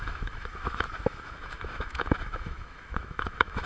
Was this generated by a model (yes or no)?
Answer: yes